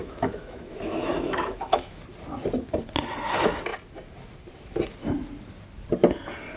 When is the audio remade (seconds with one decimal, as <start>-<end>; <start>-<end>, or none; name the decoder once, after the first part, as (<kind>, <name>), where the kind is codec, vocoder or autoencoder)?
0.0-2.0 (autoencoder, DAC-VAE)